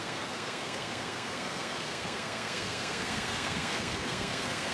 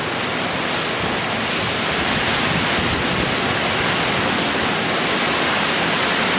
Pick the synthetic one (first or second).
first